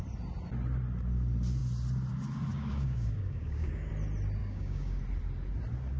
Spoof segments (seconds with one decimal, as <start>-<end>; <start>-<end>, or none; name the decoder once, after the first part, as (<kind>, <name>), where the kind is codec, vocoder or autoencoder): 2.5-3.9 (codec, DAC); 4.4-5.0